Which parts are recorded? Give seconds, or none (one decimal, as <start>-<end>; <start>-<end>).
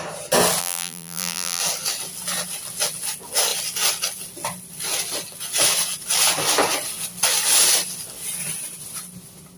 0.0-0.6; 1.6-9.6